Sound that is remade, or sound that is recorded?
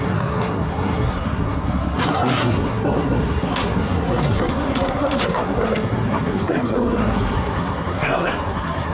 remade